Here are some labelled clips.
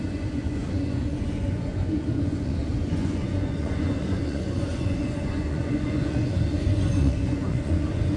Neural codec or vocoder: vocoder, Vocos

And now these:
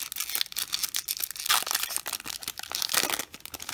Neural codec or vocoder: none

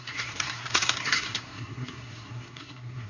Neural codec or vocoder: codec, SNAC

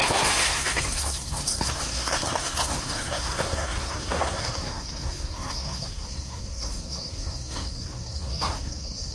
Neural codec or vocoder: codec, SNAC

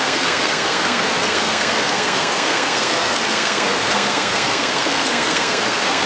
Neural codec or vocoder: codec, SNAC